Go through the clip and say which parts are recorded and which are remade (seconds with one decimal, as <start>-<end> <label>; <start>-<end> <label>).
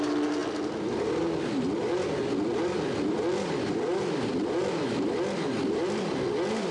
0.0-6.7 recorded